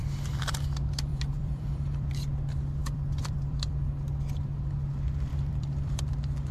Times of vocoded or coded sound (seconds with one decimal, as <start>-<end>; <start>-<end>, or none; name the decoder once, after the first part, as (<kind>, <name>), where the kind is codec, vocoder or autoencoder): 0.0-0.5 (vocoder, BigVGAN v2); 1.1-2.1; 2.8-3.7; 5.3-6.0